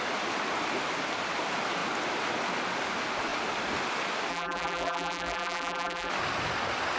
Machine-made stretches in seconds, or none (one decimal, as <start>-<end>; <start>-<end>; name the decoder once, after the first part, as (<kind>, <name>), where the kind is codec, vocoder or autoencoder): 4.3-6.1 (vocoder, BigVGAN v2)